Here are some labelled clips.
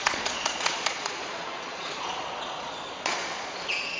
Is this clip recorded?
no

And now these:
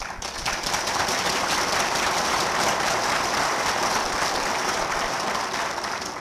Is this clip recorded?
no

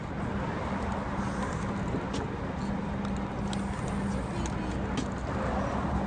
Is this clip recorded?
yes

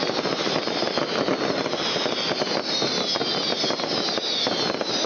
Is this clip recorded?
yes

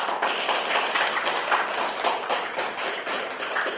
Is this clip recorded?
yes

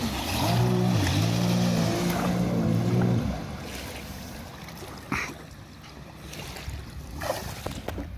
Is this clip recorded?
yes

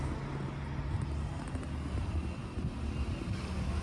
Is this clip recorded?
yes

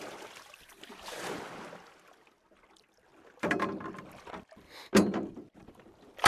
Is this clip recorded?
yes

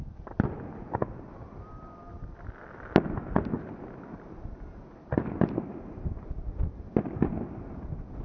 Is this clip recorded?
yes